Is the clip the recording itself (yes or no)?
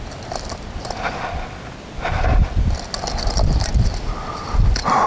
yes